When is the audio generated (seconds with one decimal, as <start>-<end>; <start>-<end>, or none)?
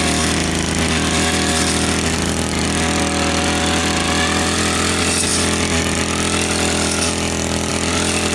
none